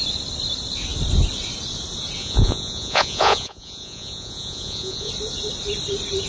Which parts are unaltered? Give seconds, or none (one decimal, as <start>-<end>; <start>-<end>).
0.0-2.2; 5.1-6.3